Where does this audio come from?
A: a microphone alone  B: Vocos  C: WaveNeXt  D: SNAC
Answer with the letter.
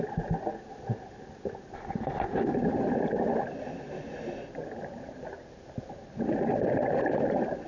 A